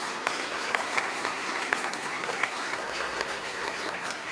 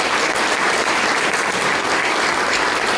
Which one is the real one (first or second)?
second